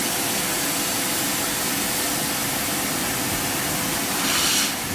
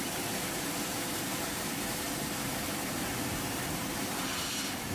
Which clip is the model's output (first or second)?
second